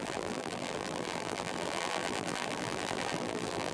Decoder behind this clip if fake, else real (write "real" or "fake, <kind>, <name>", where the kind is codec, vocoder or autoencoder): fake, vocoder, BigVGAN v2